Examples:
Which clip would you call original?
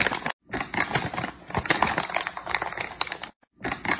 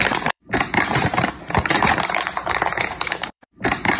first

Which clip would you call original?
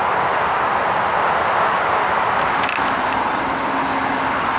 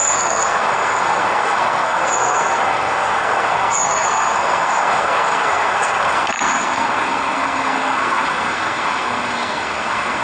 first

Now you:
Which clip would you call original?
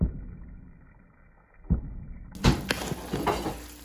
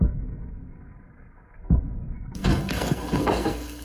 first